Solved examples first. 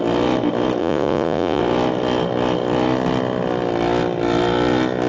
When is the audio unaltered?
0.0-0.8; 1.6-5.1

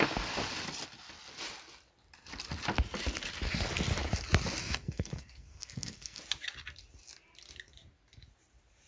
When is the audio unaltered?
0.0-4.6; 6.2-8.9

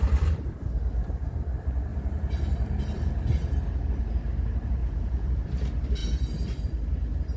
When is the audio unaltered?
0.0-4.8; 5.4-7.4

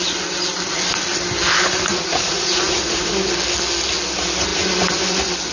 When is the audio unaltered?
0.0-1.9; 3.1-5.5